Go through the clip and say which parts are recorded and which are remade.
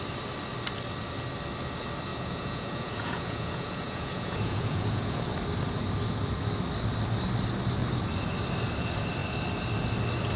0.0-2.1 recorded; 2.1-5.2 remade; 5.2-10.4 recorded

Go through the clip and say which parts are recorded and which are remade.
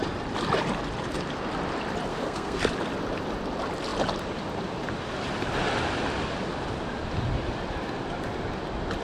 0.0-2.1 recorded; 2.1-2.6 remade; 2.6-9.0 recorded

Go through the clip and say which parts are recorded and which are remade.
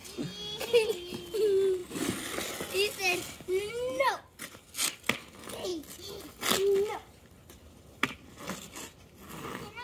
0.0-9.8 recorded